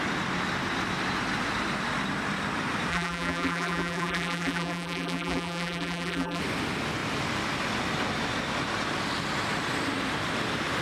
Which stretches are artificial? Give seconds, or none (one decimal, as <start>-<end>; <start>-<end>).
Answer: 2.9-6.4